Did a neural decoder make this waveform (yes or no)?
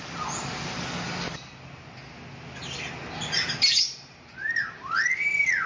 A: no